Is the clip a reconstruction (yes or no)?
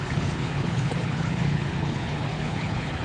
yes